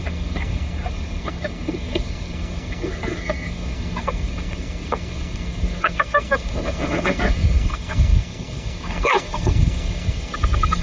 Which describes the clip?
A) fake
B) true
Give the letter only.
A